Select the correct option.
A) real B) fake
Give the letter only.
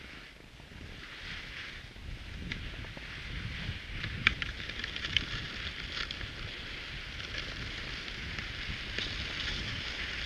A